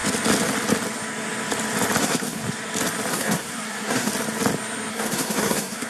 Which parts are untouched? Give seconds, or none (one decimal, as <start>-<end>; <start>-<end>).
0.0-2.0; 2.4-3.1; 4.1-4.9